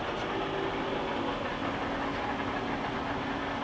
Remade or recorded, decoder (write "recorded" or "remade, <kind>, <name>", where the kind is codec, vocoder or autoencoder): recorded